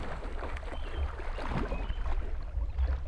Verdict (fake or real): real